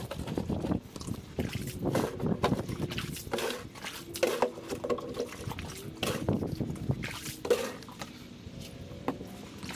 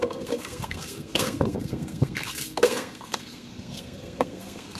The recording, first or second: first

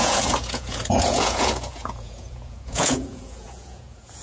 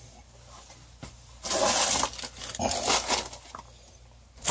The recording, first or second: second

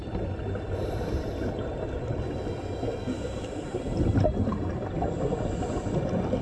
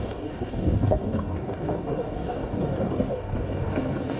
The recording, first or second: first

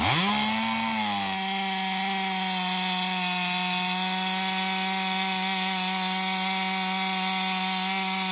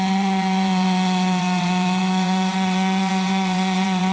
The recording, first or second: first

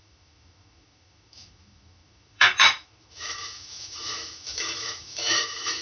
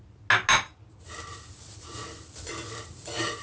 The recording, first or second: second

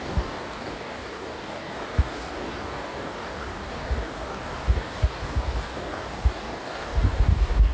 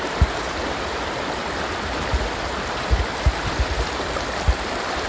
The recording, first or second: second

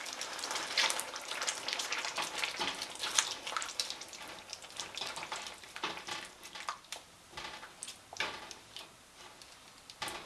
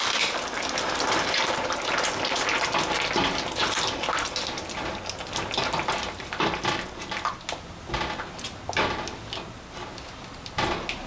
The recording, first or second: second